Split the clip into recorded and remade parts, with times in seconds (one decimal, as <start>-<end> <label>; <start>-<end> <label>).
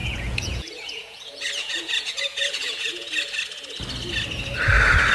0.0-3.1 remade; 3.1-5.1 recorded